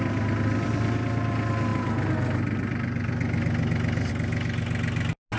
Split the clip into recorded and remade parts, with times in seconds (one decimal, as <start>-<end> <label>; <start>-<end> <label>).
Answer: 0.0-5.4 recorded

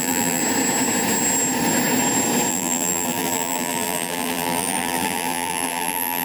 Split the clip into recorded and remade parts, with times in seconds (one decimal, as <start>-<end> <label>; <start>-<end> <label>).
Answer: 0.0-0.4 remade; 0.4-2.5 recorded; 2.5-6.2 remade

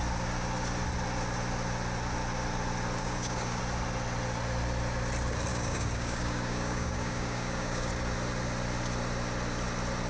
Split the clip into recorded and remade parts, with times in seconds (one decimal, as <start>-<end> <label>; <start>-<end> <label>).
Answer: 0.0-3.0 recorded; 3.0-3.6 remade; 3.6-5.5 recorded; 5.5-7.9 remade; 7.9-10.1 recorded

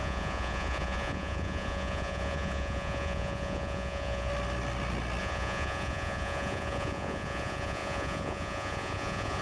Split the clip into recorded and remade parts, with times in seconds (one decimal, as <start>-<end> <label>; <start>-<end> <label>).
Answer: 0.0-4.3 remade; 4.3-5.2 recorded; 5.2-9.4 remade

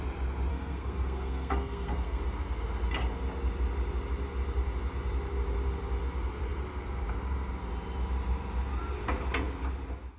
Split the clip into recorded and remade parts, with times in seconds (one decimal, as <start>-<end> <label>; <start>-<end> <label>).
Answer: 0.0-0.5 recorded; 0.5-2.2 remade; 2.2-10.2 recorded

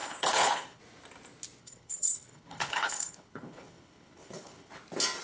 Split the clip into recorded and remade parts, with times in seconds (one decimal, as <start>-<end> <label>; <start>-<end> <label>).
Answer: 0.0-0.8 remade; 0.8-1.6 recorded; 1.6-4.7 remade; 4.7-5.2 recorded

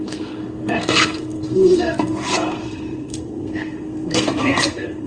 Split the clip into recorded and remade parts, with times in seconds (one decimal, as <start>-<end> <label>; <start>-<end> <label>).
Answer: 0.0-5.1 remade